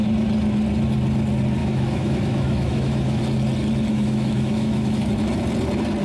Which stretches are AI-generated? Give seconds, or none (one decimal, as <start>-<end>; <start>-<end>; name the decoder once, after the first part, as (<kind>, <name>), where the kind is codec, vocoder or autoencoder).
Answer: 1.6-3.2 (autoencoder, DAC-VAE); 3.9-5.0